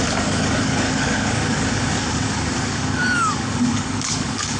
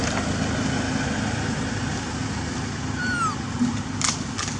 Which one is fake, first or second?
first